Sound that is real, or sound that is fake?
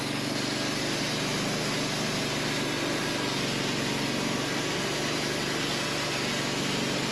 real